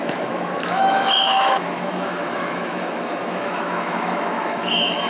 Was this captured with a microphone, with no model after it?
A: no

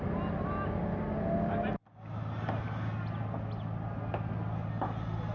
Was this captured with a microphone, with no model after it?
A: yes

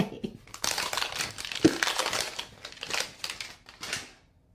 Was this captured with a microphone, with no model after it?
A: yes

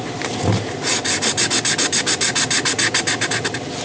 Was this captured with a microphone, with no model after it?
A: yes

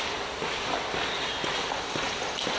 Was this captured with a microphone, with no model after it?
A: no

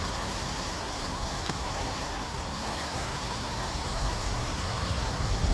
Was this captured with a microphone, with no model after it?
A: no